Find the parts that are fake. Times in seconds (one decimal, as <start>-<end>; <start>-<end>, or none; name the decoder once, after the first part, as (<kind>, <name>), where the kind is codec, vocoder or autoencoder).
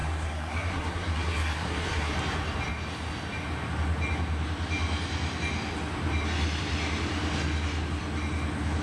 0.0-2.1 (codec, SNAC)